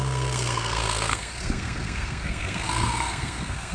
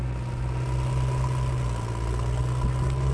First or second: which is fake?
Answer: first